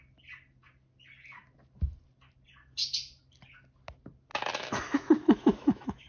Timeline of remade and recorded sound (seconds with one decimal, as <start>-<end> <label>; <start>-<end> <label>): 0.0-4.3 recorded; 4.3-6.1 remade